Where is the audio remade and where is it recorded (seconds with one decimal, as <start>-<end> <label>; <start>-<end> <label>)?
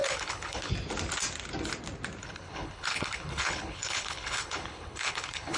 0.0-0.7 remade; 0.7-2.2 recorded; 2.2-5.6 remade